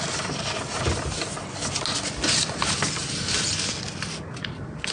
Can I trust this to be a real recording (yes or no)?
yes